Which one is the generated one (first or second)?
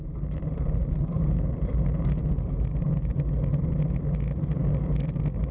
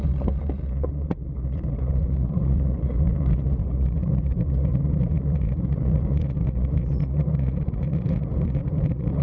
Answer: second